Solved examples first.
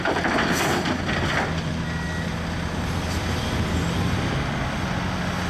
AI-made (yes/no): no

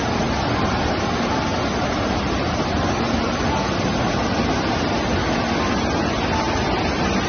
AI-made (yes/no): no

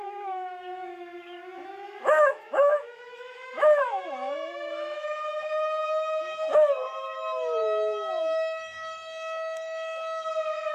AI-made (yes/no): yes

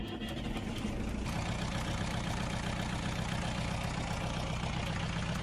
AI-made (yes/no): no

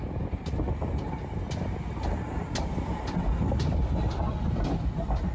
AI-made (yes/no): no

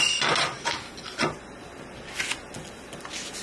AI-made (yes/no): no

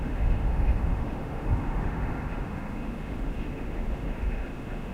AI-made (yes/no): yes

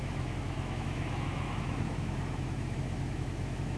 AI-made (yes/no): yes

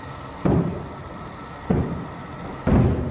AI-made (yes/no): no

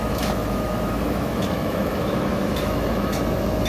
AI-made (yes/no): yes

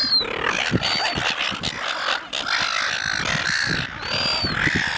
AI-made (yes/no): no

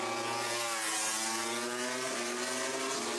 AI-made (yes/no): no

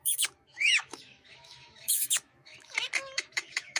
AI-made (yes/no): yes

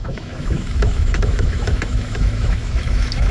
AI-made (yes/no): yes